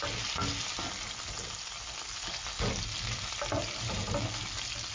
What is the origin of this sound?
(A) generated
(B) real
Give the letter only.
B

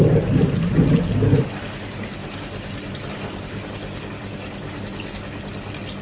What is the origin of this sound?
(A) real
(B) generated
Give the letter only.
A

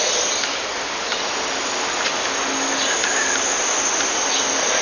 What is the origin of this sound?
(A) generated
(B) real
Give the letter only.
B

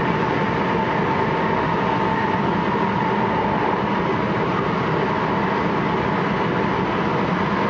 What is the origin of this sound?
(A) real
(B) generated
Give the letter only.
A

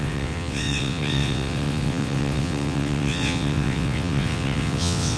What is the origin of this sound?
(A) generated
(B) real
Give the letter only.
A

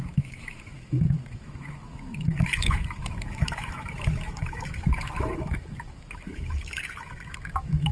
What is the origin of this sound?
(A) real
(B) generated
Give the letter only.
B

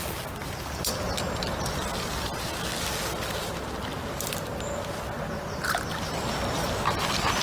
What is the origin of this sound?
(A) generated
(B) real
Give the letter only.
B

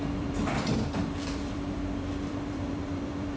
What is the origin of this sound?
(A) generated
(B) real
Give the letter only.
A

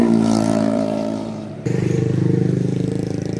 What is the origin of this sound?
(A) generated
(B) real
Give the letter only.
A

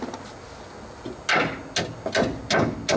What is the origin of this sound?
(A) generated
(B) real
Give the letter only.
B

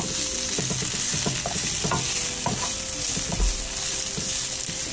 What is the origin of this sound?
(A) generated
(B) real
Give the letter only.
B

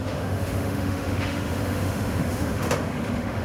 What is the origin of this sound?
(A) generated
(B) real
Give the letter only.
A